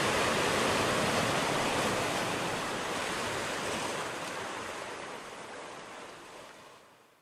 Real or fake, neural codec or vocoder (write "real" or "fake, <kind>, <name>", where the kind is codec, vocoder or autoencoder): real